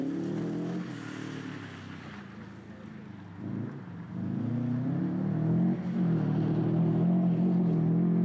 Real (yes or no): yes